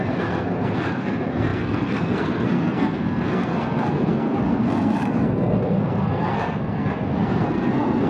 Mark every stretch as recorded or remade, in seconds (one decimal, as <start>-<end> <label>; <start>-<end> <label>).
0.0-8.1 remade